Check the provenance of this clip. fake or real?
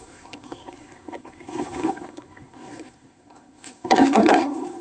fake